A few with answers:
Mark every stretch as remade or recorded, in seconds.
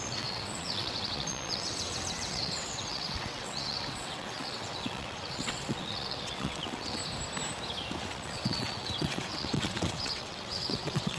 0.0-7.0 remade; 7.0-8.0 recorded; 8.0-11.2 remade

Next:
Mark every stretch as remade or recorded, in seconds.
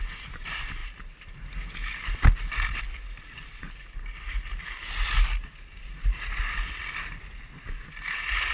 0.0-8.5 recorded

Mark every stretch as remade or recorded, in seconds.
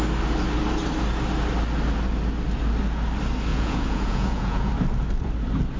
0.0-3.5 recorded; 3.5-4.7 remade; 4.7-5.8 recorded